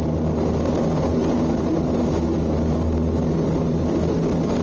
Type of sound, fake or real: real